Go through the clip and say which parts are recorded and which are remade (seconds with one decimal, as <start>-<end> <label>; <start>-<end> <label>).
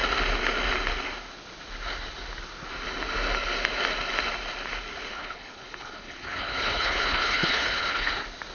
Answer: 0.0-5.1 recorded; 5.1-8.1 remade; 8.1-8.5 recorded